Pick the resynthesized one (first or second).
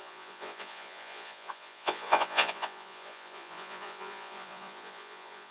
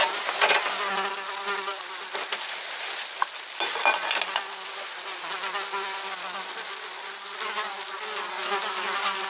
first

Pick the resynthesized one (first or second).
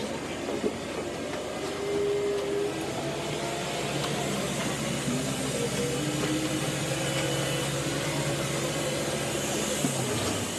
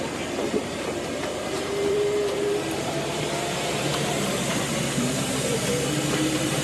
second